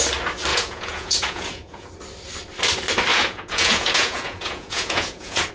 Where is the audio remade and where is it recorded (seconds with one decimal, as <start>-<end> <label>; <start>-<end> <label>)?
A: 0.0-0.5 recorded; 0.5-1.9 remade; 1.9-3.1 recorded; 3.1-5.5 remade

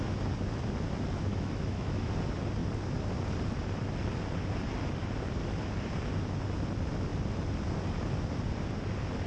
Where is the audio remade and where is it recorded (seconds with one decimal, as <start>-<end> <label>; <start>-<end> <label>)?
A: 0.0-1.3 recorded; 1.3-2.1 remade; 2.1-9.3 recorded

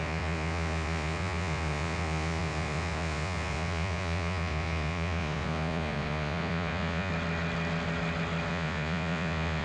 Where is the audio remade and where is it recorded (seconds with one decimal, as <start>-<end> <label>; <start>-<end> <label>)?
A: 0.0-7.1 remade; 7.1-8.5 recorded; 8.5-9.6 remade

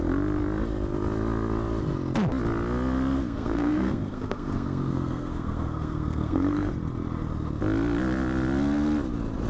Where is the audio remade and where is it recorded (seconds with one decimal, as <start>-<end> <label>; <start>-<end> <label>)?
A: 0.0-3.2 recorded; 3.2-6.7 remade; 6.7-9.5 recorded

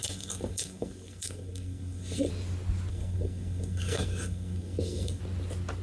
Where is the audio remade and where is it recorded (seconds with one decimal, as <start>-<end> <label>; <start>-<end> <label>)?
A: 0.0-2.3 remade; 2.3-2.9 recorded; 2.9-5.2 remade; 5.2-5.8 recorded

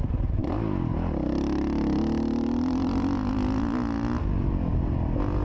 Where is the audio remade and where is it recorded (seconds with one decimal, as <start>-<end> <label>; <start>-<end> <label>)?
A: 0.0-5.4 recorded

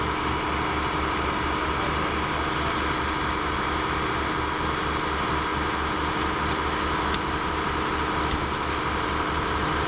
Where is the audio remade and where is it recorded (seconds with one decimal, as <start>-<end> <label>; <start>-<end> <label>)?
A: 0.0-9.9 recorded

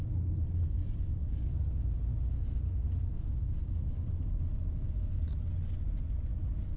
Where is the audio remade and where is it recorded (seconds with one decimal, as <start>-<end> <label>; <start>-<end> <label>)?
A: 0.0-1.2 recorded; 1.2-2.2 remade; 2.2-4.7 recorded; 4.7-5.3 remade; 5.3-6.8 recorded